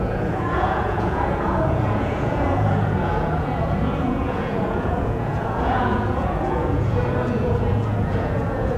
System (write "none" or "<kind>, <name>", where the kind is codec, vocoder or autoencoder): vocoder, Vocos